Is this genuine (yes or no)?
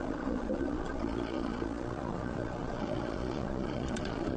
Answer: no